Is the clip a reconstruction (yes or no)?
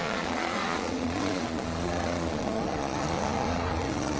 yes